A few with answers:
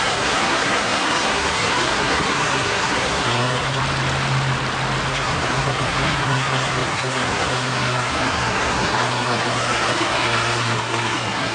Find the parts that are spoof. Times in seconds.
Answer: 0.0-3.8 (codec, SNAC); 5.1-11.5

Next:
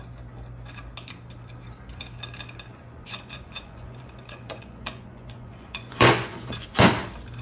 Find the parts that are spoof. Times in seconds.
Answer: 2.7-6.9 (vocoder, Vocos)